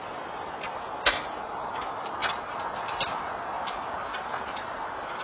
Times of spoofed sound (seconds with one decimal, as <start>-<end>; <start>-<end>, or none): none

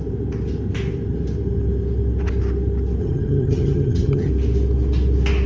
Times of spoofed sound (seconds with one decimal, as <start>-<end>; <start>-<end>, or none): 3.0-4.3

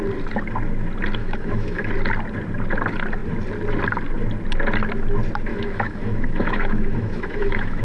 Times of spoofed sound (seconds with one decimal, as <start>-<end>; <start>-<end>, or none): 1.2-1.9; 5.5-7.8

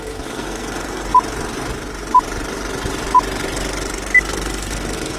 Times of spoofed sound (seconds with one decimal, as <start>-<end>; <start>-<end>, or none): 0.0-1.1; 4.2-5.2

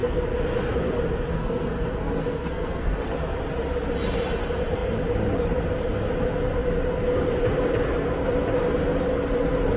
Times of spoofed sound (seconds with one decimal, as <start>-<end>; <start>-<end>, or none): 1.3-3.1

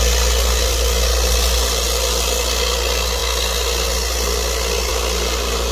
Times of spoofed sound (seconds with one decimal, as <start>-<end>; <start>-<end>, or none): none

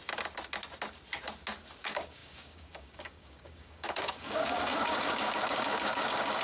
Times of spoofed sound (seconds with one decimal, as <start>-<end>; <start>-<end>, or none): 1.8-6.4